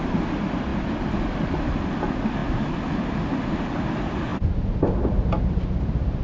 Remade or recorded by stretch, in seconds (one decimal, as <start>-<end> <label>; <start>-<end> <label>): 0.0-6.2 recorded